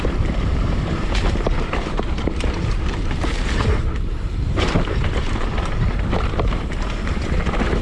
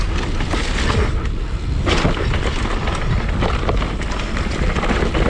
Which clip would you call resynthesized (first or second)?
first